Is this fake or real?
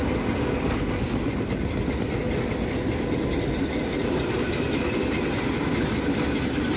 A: real